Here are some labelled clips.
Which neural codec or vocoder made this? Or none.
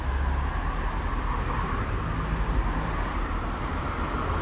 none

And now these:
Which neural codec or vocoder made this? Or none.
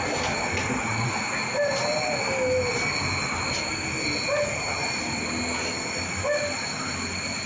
none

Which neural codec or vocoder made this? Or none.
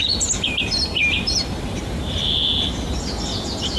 none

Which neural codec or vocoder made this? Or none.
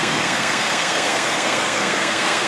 codec, SNAC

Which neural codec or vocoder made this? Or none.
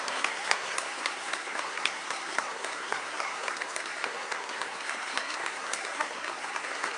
codec, SNAC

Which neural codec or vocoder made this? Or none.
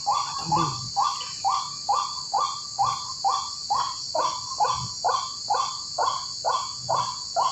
none